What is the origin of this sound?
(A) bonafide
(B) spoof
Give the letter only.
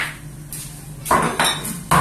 A